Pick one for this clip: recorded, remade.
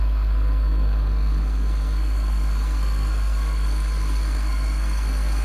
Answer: remade